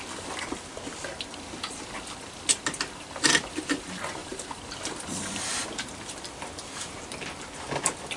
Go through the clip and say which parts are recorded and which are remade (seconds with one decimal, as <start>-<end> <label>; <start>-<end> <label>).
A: 0.0-4.2 recorded; 4.2-4.7 remade; 4.7-8.2 recorded